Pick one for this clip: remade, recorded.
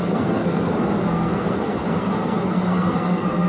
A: remade